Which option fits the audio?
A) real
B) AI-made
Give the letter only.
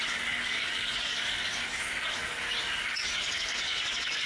B